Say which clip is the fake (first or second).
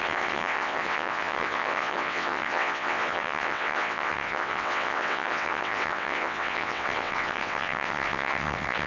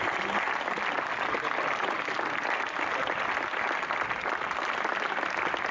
first